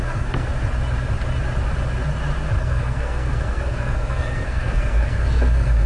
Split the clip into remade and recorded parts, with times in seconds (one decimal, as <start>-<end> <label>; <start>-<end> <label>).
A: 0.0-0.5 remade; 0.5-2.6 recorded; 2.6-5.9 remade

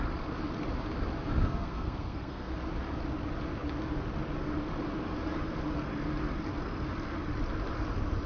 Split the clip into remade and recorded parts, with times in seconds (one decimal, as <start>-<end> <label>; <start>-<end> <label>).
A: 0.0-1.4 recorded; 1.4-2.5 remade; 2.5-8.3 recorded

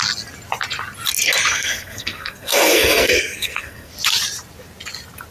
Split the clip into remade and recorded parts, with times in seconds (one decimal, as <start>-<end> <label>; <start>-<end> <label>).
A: 0.0-1.5 recorded; 1.5-3.9 remade; 3.9-5.3 recorded

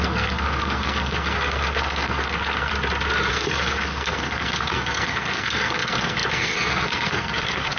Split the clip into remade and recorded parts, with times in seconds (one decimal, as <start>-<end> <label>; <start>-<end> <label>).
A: 0.0-2.7 remade; 2.7-3.3 recorded; 3.3-7.8 remade

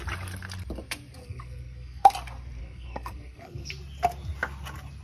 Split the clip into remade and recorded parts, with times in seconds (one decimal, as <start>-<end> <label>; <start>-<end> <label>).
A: 0.0-1.2 recorded; 1.2-2.1 remade; 2.1-2.6 recorded; 2.6-3.7 remade; 3.7-5.0 recorded